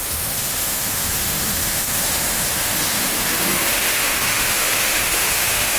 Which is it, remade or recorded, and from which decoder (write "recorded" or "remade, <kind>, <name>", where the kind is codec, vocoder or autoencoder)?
remade, autoencoder, DAC-VAE